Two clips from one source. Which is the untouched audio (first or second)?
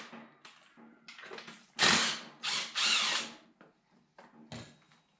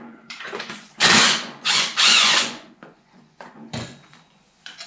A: first